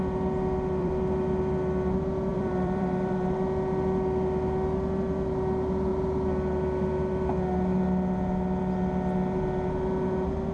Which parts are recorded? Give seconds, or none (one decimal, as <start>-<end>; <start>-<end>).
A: 0.0-0.8; 1.4-2.3; 3.1-10.5